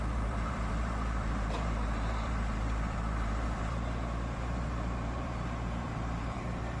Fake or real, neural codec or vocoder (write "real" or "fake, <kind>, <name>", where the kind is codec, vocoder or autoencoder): fake, vocoder, BigVGAN v2